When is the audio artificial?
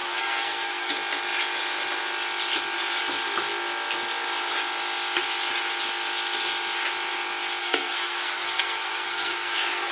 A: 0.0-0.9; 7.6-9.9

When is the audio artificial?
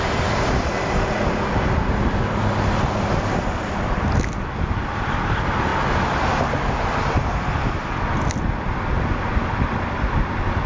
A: none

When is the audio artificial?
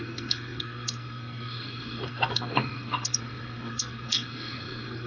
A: 0.0-5.1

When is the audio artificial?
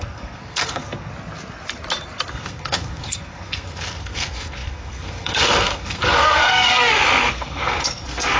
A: 0.0-1.1; 2.3-8.4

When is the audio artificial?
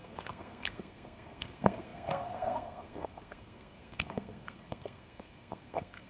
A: 0.0-6.1